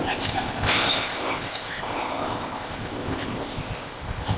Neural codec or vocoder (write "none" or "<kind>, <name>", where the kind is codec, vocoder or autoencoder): codec, ZipCodec